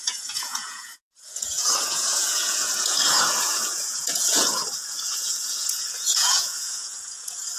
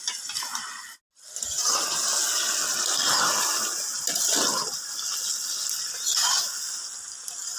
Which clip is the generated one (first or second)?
first